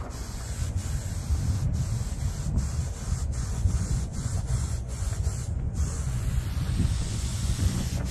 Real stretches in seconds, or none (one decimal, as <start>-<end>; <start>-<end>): 0.8-3.1